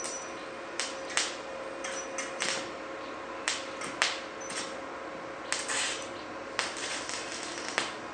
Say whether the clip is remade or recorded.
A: recorded